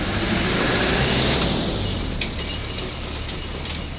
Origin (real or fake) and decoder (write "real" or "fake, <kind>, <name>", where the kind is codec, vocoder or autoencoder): real